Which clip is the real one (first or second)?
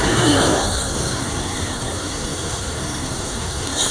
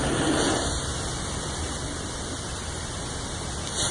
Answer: second